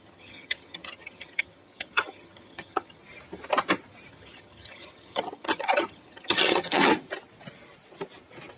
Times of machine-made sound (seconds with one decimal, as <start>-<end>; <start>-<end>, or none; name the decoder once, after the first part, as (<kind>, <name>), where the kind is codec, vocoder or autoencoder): 0.0-3.0 (vocoder, HiFi-GAN); 4.1-6.9